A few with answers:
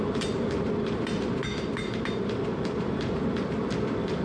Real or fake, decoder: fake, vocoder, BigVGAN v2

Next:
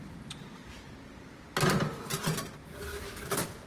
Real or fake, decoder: real